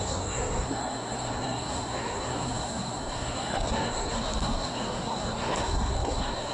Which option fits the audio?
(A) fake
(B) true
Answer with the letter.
A